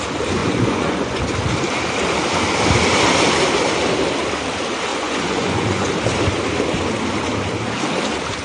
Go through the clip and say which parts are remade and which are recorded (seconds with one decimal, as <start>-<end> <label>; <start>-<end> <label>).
0.0-0.4 recorded; 0.4-1.2 remade; 1.2-4.9 recorded; 4.9-5.9 remade; 5.9-8.4 recorded